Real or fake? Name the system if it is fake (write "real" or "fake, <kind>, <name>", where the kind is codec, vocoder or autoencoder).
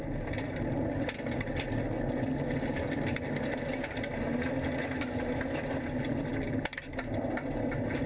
real